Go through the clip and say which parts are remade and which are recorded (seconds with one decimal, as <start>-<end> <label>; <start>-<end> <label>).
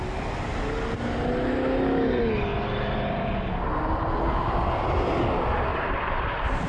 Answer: 0.0-5.7 recorded; 5.7-6.3 remade; 6.3-6.7 recorded